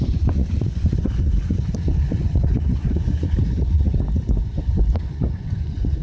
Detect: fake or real fake